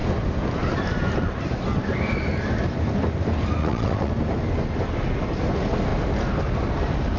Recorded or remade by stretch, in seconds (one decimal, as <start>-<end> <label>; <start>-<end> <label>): 0.0-3.6 recorded; 3.6-4.1 remade; 4.1-7.2 recorded

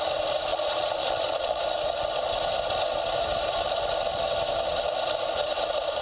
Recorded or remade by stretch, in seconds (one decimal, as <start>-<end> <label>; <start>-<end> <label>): 0.0-0.5 recorded; 0.5-1.6 remade; 1.6-6.0 recorded

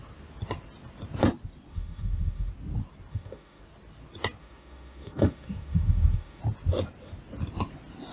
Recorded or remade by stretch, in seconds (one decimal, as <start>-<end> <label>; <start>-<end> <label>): 0.0-1.7 recorded; 1.7-2.5 remade; 2.5-3.1 recorded; 3.1-3.6 remade; 3.6-4.4 recorded; 4.4-6.4 remade; 6.4-8.1 recorded

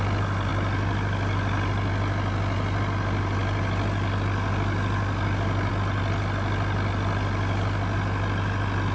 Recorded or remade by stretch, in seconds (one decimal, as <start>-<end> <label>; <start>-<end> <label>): 0.0-8.9 recorded

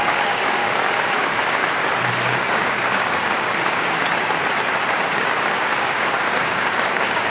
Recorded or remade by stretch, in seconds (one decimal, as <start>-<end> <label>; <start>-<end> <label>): 0.0-1.6 remade; 1.6-2.1 recorded; 2.1-4.0 remade; 4.0-5.0 recorded; 5.0-7.3 remade